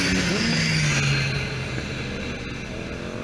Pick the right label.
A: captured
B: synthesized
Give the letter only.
A